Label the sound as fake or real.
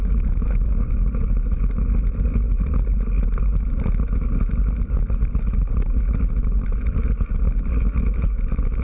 real